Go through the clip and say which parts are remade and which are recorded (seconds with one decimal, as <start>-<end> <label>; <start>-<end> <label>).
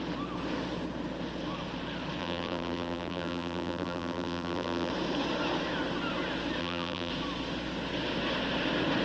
0.0-2.2 recorded; 2.2-4.9 remade; 4.9-6.6 recorded; 6.6-7.1 remade; 7.1-9.0 recorded